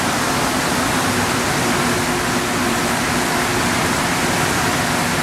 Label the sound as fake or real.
real